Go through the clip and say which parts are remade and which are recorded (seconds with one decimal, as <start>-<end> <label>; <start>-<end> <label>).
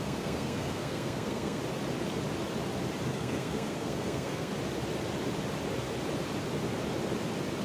0.0-1.6 remade; 1.6-3.1 recorded; 3.1-4.5 remade; 4.5-7.6 recorded